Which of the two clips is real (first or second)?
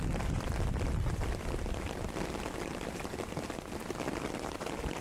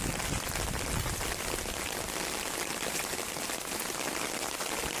second